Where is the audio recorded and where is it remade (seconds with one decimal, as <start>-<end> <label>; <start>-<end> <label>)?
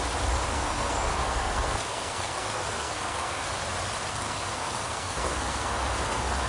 0.0-0.5 recorded; 0.5-3.5 remade; 3.5-4.1 recorded; 4.1-6.5 remade